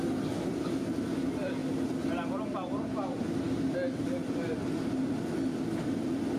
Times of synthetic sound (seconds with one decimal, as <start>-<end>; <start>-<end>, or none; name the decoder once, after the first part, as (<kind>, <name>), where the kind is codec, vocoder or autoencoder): none